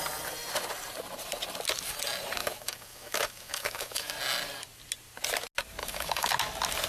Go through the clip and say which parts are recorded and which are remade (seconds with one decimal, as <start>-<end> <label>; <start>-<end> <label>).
0.0-2.4 recorded; 2.4-4.1 remade; 4.1-5.8 recorded; 5.8-6.3 remade; 6.3-6.9 recorded